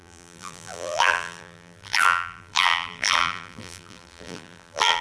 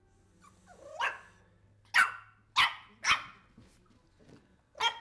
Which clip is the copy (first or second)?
first